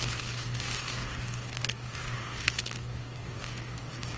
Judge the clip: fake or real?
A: fake